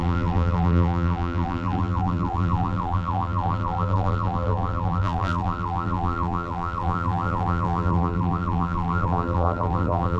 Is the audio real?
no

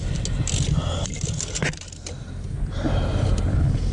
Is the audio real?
yes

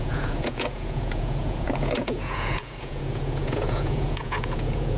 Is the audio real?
no